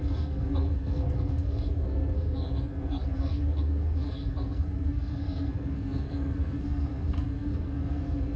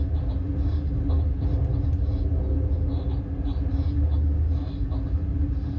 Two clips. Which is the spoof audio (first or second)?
first